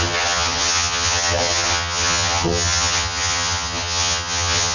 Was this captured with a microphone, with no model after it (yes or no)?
no